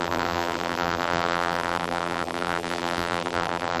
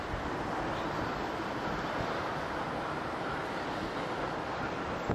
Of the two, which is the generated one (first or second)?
first